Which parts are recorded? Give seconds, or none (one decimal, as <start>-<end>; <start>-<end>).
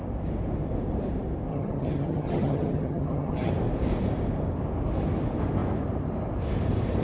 0.0-1.5; 3.5-7.0